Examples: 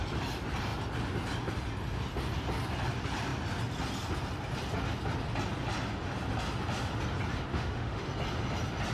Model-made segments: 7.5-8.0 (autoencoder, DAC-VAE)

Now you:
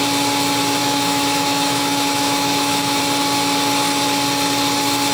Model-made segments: 0.8-3.0 (autoencoder, DAC-VAE)

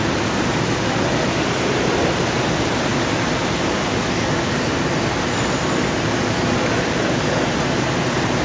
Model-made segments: none